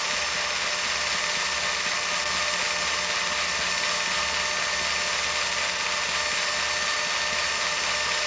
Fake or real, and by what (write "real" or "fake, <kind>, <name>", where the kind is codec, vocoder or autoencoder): real